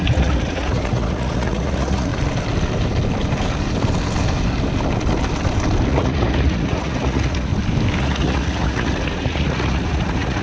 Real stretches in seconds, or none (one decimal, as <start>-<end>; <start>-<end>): 2.1-5.9; 7.5-8.0